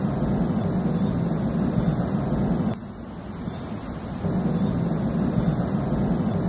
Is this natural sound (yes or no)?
yes